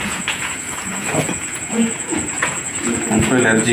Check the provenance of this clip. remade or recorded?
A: remade